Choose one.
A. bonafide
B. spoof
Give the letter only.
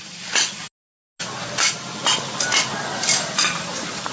A